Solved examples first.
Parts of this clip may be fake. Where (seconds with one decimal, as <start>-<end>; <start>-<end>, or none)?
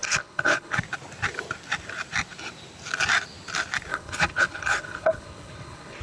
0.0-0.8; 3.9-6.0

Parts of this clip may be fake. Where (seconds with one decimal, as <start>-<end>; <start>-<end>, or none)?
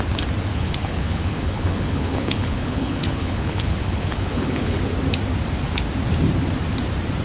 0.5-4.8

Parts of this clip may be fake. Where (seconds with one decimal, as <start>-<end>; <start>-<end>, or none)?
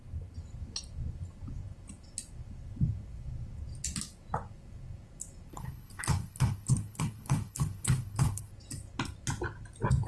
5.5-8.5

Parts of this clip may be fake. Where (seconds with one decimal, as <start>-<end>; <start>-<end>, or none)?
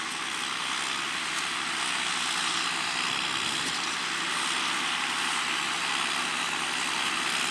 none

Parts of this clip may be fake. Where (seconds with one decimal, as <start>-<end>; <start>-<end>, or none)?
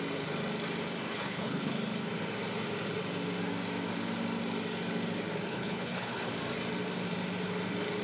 1.1-1.7; 5.5-6.3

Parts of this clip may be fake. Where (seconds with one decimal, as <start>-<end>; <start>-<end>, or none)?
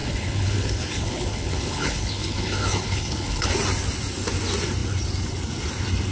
0.0-3.5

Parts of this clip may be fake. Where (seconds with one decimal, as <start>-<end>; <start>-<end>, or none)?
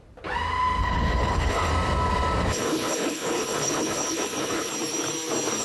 0.8-1.7; 2.5-4.7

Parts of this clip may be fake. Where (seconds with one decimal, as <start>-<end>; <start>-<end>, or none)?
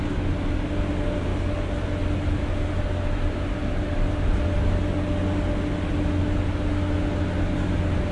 none